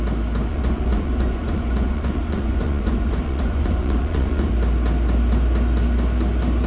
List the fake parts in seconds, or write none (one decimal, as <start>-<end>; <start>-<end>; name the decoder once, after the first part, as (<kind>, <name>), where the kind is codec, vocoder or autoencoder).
0.5-4.5 (vocoder, Vocos)